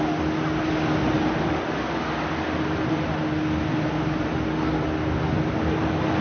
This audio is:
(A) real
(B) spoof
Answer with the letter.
A